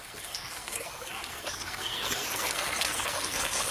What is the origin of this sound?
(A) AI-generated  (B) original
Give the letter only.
A